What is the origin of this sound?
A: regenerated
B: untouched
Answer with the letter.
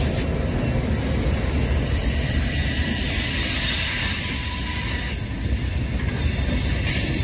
B